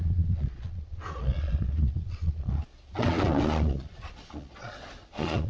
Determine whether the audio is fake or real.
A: fake